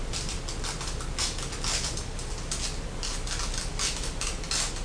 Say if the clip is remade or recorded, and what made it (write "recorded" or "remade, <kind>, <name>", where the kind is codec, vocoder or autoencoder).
recorded